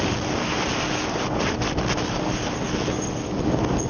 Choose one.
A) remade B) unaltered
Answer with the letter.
B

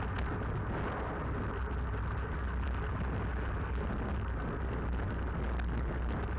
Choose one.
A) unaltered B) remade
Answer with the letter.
A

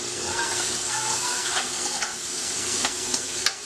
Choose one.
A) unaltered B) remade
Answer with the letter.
B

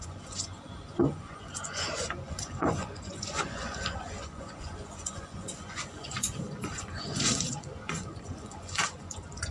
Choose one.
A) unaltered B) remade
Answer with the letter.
B